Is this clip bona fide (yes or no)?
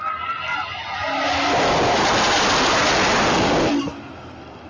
yes